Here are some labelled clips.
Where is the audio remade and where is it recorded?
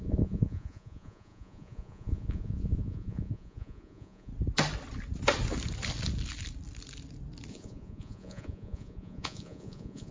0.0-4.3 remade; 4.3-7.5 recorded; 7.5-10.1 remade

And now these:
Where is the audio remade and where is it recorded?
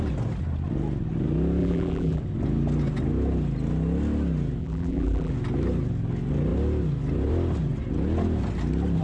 0.0-1.6 recorded; 1.6-2.2 remade; 2.2-4.6 recorded; 4.6-5.3 remade; 5.3-9.0 recorded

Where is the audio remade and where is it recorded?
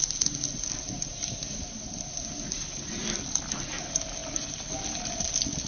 0.0-5.7 recorded